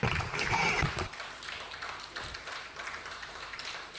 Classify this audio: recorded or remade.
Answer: remade